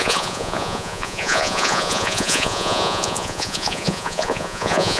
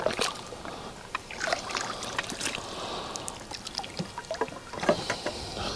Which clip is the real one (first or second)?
second